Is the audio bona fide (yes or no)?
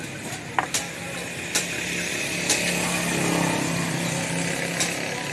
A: yes